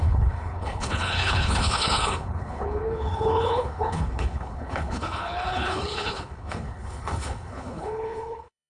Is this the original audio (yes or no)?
no